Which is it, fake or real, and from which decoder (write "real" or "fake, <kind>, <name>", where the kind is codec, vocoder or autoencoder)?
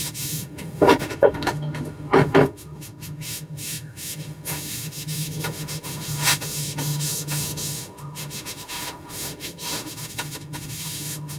fake, autoencoder, DAC-VAE